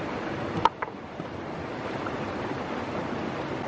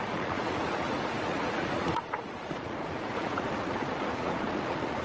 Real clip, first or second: first